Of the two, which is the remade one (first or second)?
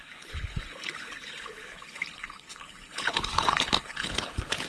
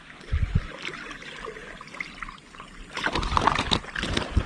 first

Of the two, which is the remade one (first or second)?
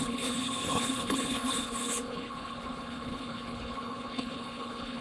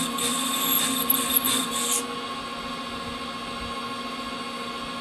first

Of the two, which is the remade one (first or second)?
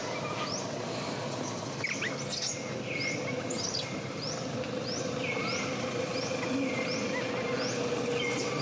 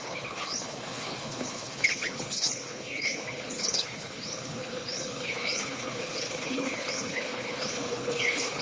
second